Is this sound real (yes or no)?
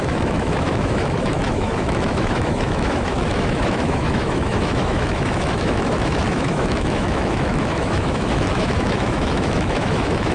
no